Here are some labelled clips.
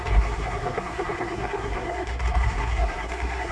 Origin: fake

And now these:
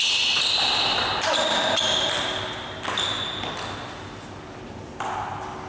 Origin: real